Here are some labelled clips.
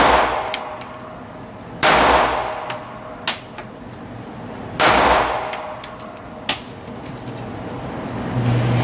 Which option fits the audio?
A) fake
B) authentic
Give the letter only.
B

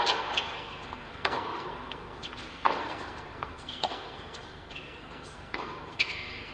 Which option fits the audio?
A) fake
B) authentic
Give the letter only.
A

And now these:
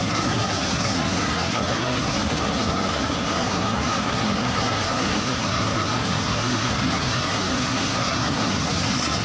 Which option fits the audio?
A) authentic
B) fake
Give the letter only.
B